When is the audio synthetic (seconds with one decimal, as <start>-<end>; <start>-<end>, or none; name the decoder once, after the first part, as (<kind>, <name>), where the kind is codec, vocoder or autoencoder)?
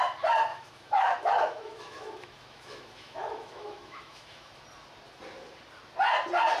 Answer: 0.5-4.5 (autoencoder, DAC-VAE)